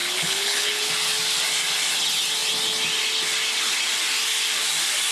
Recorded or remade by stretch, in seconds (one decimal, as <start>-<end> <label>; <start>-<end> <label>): 0.0-0.9 remade; 0.9-5.1 recorded